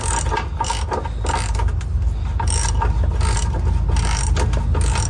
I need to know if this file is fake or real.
real